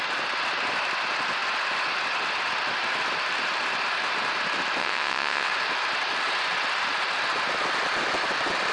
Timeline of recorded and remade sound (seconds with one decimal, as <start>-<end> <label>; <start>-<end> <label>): 0.0-4.8 recorded; 4.8-5.5 remade; 5.5-8.7 recorded